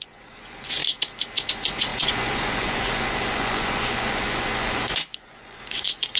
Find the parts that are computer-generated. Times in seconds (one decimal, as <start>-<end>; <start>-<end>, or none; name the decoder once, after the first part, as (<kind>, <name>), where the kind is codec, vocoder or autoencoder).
0.0-0.8 (vocoder, Vocos); 1.5-6.2